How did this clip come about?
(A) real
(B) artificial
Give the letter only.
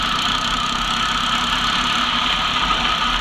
A